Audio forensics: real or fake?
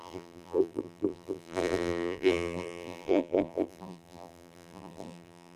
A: fake